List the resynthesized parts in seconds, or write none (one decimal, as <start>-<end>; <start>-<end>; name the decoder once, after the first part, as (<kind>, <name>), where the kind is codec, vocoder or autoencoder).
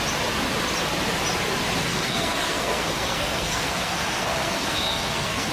1.9-5.5 (codec, SNAC)